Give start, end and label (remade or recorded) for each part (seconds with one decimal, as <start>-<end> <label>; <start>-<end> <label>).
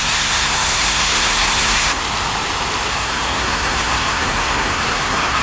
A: 0.0-2.0 remade; 2.0-2.9 recorded; 2.9-5.4 remade